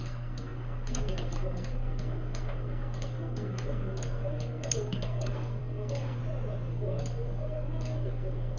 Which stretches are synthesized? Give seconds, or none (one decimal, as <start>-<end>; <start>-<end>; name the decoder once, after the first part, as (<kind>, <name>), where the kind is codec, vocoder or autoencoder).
0.0-6.2 (codec, SNAC); 6.7-8.6

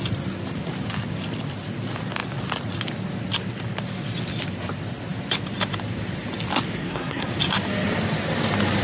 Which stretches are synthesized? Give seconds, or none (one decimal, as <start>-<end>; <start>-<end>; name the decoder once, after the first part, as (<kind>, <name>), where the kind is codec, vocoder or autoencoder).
6.8-7.3 (codec, SNAC)

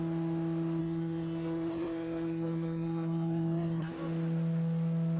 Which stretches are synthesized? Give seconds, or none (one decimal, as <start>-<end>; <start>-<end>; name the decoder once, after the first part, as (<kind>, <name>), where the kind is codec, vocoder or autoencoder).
0.8-3.9 (codec, SNAC)

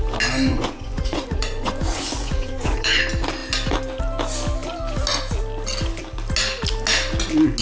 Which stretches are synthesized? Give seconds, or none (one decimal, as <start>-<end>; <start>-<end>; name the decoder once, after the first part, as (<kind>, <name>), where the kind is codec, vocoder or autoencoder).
0.5-3.0 (vocoder, Vocos)